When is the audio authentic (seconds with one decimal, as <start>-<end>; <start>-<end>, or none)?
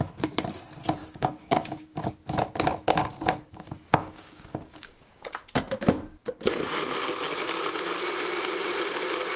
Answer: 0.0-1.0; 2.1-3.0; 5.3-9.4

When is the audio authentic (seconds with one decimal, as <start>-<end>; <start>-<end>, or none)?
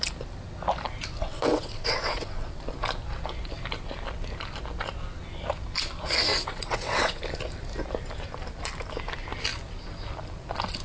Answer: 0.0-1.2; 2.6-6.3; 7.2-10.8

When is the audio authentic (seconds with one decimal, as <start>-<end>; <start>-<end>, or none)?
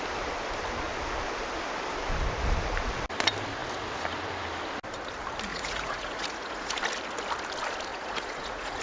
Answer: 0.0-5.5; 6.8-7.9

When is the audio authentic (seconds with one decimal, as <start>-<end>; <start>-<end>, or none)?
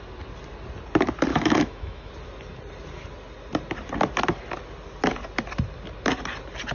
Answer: 0.0-1.3; 2.1-6.7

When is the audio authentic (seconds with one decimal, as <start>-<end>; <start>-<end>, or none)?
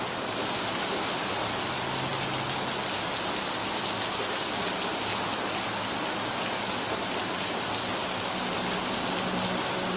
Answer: 0.0-10.0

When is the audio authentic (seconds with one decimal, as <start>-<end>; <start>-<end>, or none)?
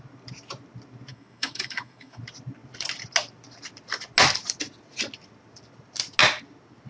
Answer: 0.0-1.1; 2.2-6.9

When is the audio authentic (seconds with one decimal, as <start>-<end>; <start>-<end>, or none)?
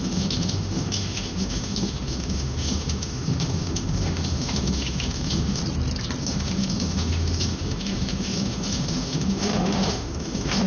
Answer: 5.6-6.2